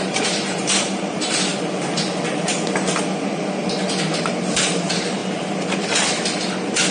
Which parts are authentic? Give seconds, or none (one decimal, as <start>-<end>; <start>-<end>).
1.5-4.2; 5.2-6.9

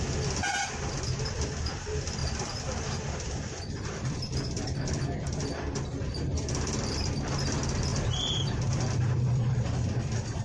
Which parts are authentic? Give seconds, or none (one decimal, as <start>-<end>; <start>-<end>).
0.0-2.2; 7.1-7.9

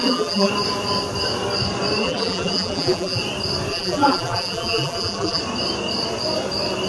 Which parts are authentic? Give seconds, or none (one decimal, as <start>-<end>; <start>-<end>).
0.5-2.0; 3.2-3.7; 5.4-6.9

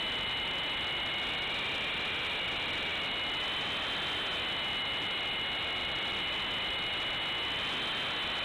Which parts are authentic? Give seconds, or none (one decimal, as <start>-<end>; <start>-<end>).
0.0-8.4

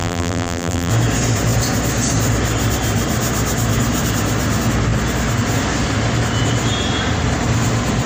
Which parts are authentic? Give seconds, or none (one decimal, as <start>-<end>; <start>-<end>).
0.9-8.1

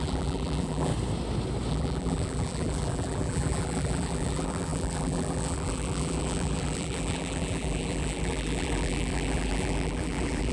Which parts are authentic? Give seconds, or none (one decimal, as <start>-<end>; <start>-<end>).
0.9-1.7

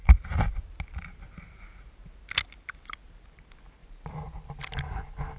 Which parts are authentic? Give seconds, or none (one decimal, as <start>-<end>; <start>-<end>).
0.6-3.8; 4.6-5.4

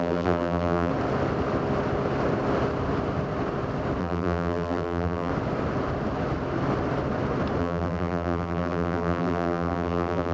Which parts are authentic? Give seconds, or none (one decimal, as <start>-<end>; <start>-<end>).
0.9-4.0; 5.3-7.6